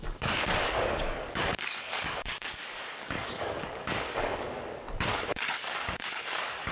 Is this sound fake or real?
fake